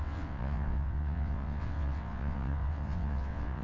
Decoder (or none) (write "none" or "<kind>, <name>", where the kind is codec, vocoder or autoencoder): vocoder, WaveNeXt